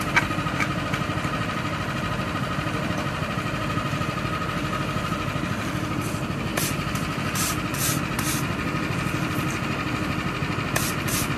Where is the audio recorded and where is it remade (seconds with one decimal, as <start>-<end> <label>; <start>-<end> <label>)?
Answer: 0.0-11.4 recorded